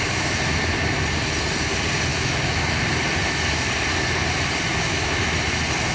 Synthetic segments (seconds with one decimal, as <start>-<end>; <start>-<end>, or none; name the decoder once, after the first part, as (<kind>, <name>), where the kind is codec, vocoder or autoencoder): 2.1-2.7 (autoencoder, DAC-VAE); 4.7-5.2